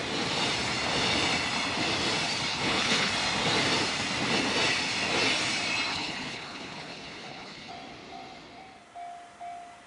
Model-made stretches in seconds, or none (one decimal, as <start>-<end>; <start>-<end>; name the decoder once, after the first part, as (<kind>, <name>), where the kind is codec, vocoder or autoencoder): 2.5-3.1 (codec, HILCodec); 5.9-7.7